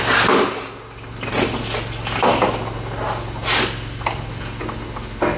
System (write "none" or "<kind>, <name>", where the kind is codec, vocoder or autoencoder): none